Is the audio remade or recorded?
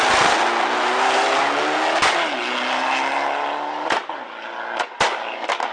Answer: recorded